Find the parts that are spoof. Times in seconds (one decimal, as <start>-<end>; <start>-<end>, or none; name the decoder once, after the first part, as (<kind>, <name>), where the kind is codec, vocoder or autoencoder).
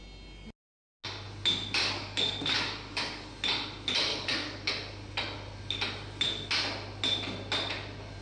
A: 1.8-3.3 (codec, DAC); 4.1-4.7